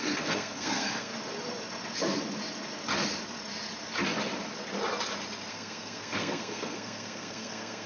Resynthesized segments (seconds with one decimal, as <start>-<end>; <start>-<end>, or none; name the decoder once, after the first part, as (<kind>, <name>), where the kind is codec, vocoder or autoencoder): 0.0-1.1 (codec, SNAC); 5.5-7.9